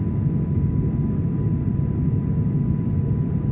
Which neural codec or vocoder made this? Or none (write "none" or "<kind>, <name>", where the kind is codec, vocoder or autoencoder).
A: none